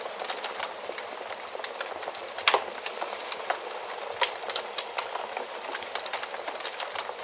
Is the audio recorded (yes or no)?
no